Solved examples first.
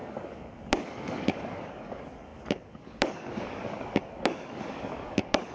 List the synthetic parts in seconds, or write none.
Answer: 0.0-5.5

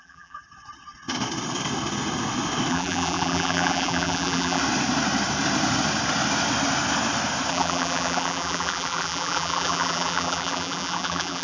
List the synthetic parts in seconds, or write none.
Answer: 0.0-0.4; 2.7-4.6; 7.5-11.4

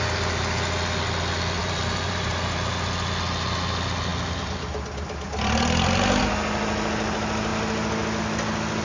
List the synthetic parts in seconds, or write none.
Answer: 1.6-2.3